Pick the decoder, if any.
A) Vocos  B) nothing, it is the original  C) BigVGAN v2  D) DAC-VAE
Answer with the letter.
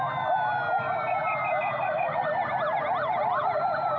B